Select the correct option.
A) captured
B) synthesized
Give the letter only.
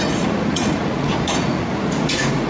B